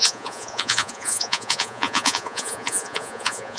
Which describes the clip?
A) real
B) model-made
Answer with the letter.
B